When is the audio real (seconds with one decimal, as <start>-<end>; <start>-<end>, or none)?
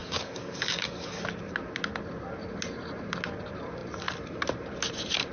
1.2-5.3